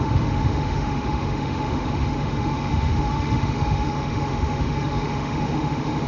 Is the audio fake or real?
fake